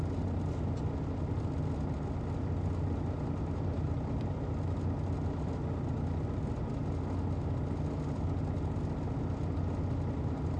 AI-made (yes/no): no